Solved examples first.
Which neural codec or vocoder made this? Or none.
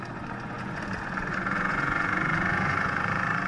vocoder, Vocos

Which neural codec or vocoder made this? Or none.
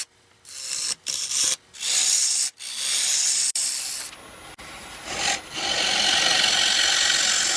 none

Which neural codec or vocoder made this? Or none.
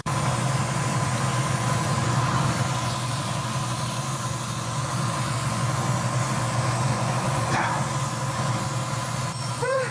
vocoder, Vocos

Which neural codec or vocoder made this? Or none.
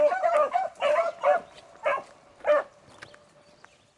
none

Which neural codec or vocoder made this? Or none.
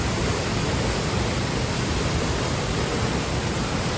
none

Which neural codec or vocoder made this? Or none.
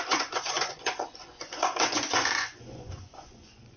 vocoder, Vocos